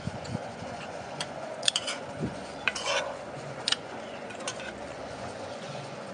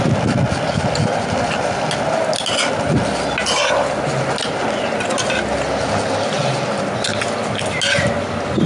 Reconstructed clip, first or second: first